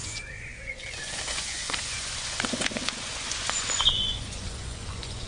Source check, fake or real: fake